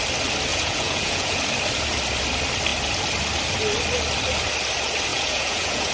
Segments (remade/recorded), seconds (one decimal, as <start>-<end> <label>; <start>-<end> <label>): 0.0-0.5 recorded; 0.5-1.4 remade; 1.4-5.1 recorded; 5.1-5.9 remade